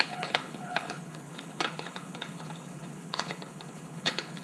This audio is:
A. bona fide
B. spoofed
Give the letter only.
B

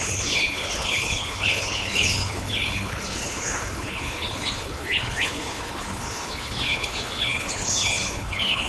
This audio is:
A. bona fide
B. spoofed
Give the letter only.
B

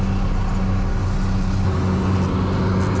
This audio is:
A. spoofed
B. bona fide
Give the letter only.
B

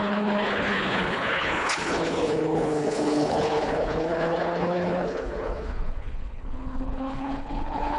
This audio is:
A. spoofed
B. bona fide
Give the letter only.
A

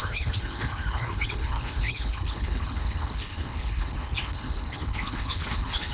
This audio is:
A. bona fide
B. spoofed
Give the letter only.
B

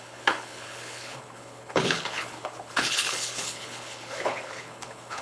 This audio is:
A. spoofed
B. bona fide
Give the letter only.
A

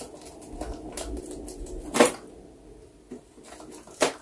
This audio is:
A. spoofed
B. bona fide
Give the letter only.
B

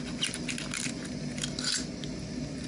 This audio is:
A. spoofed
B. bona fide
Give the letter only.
B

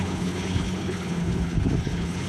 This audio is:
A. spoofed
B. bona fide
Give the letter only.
A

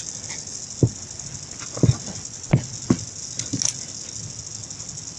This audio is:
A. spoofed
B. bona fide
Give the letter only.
B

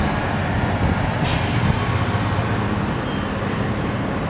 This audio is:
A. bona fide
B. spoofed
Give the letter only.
A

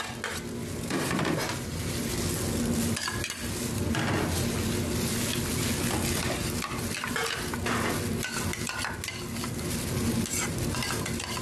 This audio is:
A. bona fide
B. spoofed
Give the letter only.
A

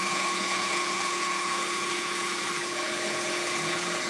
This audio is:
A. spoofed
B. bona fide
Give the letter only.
A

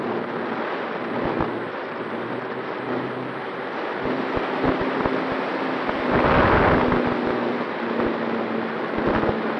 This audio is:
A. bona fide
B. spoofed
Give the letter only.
A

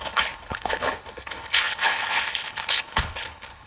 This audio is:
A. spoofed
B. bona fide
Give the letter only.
A